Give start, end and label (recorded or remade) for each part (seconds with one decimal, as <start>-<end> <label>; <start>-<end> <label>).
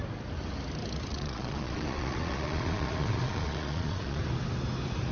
0.0-1.1 recorded; 1.1-4.2 remade; 4.2-5.1 recorded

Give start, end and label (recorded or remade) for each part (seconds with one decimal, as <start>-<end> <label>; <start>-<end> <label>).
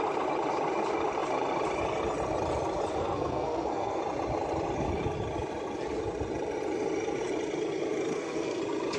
0.0-3.0 recorded; 3.0-4.0 remade; 4.0-8.1 recorded; 8.1-8.6 remade; 8.6-9.0 recorded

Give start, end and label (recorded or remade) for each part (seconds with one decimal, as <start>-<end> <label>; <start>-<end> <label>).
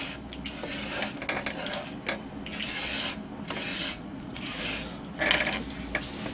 0.0-3.7 recorded; 3.7-4.6 remade; 4.6-6.3 recorded